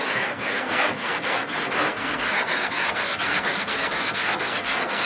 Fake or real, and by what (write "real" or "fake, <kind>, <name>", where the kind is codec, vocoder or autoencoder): fake, codec, SNAC